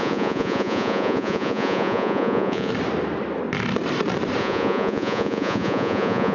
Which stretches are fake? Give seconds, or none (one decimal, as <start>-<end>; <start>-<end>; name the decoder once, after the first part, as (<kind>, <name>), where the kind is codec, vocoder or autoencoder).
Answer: 0.0-2.7 (vocoder, Vocos); 4.4-6.3